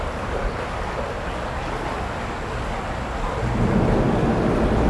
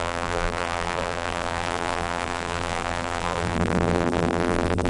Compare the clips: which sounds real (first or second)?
first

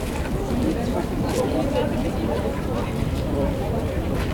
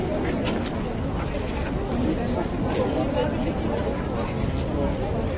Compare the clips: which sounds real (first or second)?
second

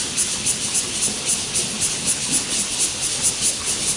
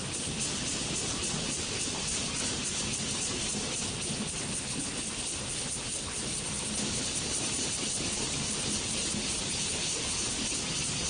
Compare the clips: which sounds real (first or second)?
first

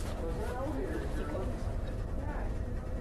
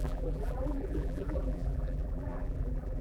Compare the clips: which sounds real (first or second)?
first